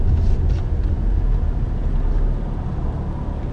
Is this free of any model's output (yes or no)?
yes